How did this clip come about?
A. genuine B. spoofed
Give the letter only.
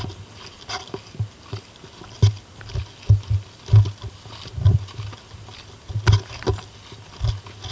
A